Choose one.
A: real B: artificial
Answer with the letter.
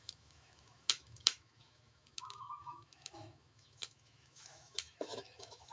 B